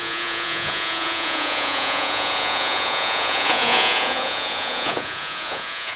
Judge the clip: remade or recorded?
remade